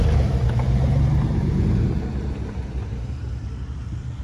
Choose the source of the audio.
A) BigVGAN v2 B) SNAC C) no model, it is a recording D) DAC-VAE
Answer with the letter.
A